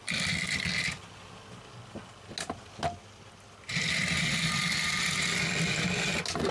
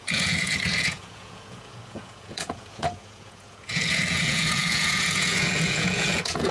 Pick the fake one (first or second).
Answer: second